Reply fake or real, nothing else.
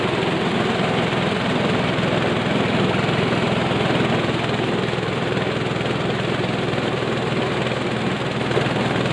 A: real